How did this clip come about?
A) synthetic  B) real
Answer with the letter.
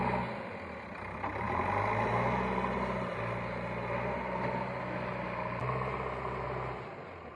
B